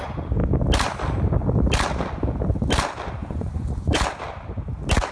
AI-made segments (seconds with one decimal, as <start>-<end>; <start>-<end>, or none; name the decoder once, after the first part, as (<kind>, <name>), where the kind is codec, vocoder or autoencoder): 3.2-4.0 (vocoder, Vocos)